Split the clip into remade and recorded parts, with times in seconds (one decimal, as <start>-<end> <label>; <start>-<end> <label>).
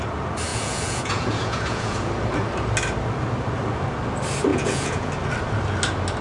0.0-0.5 recorded; 0.5-2.1 remade; 2.1-4.5 recorded; 4.5-5.1 remade; 5.1-6.2 recorded